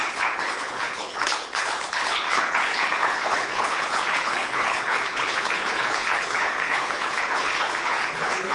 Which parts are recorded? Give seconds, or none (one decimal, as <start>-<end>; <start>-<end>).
none